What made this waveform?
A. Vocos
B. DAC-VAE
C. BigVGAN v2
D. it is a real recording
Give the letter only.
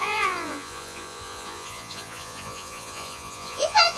A